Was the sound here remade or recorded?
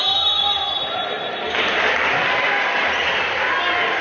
recorded